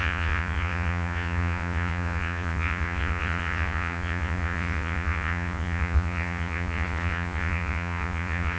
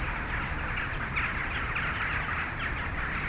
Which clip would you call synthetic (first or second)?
first